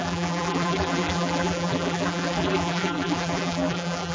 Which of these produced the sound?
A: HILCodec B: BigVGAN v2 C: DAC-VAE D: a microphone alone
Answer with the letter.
B